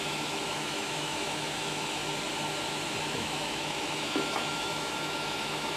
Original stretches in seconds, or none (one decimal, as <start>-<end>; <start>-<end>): 2.0-3.0